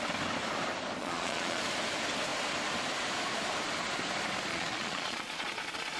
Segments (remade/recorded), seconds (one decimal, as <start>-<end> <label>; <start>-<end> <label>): 0.0-1.0 recorded; 1.0-1.6 remade; 1.6-4.5 recorded; 4.5-6.0 remade